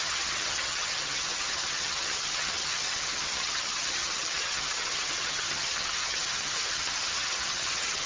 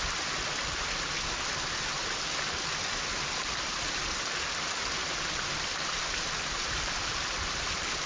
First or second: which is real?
second